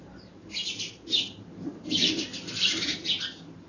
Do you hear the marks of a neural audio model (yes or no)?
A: yes